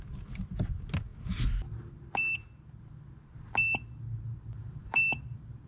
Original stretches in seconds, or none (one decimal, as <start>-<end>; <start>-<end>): 0.0-4.6